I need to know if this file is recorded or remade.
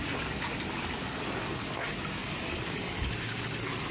recorded